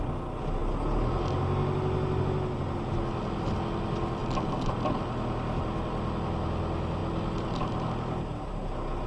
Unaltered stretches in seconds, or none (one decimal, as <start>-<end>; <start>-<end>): 0.0-4.2; 5.6-9.1